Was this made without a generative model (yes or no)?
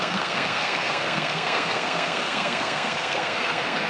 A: no